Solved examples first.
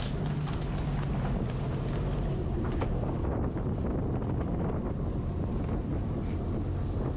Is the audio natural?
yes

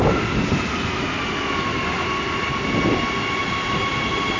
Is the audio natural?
yes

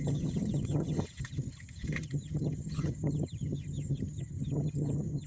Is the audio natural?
no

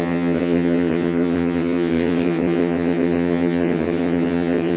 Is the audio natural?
no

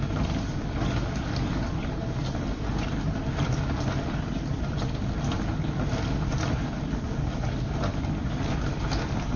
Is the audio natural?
yes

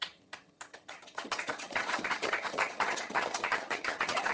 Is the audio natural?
no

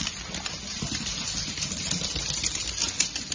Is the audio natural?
yes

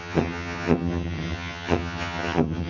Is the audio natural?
no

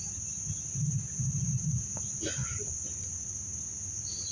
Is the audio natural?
yes